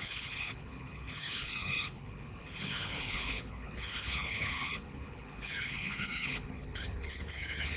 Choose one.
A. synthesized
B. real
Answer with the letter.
A